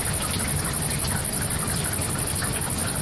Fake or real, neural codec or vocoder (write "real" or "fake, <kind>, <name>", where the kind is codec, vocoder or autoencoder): real